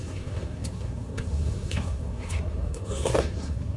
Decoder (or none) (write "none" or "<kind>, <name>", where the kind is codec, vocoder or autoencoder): codec, SNAC